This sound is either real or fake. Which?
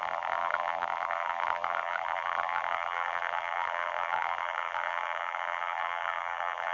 fake